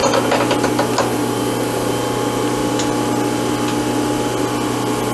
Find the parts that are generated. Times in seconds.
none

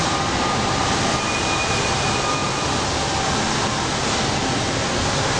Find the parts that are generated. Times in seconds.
none

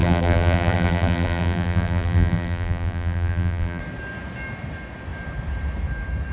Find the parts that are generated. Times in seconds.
0.0-3.8

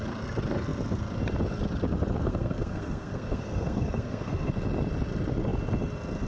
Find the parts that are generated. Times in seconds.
2.2-4.5

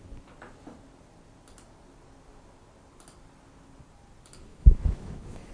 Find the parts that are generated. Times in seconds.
4.5-5.5

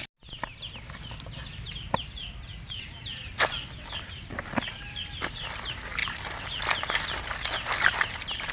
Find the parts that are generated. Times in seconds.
0.5-1.7; 2.2-4.8; 6.0-6.6